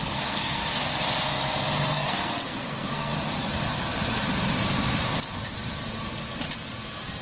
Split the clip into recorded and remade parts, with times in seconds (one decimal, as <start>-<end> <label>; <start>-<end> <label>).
0.0-0.6 remade; 0.6-1.9 recorded; 1.9-3.1 remade; 3.1-7.2 recorded